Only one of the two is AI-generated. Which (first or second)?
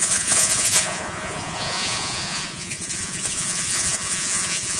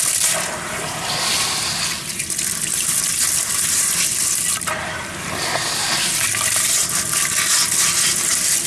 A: first